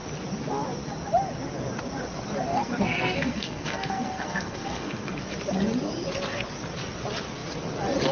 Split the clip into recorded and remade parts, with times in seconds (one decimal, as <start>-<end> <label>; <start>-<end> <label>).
0.0-2.5 recorded; 2.5-5.2 remade; 5.2-8.1 recorded